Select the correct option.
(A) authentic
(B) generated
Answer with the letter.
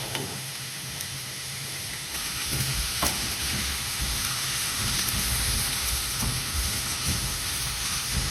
B